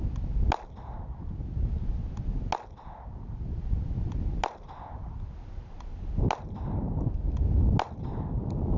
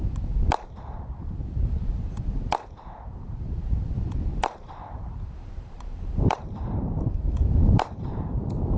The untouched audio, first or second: first